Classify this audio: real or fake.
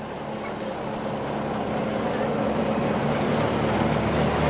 real